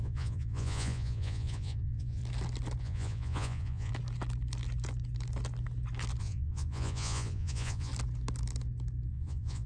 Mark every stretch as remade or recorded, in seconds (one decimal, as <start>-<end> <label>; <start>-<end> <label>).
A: 0.0-2.2 remade; 2.2-2.8 recorded; 2.8-3.9 remade; 3.9-6.2 recorded; 6.2-7.9 remade; 7.9-9.1 recorded; 9.1-9.7 remade